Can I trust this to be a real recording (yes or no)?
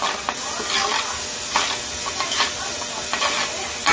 yes